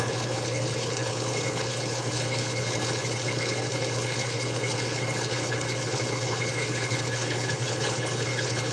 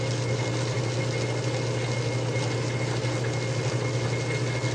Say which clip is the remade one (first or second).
first